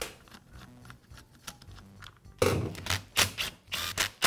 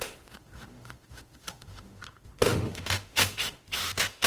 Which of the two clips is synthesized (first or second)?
second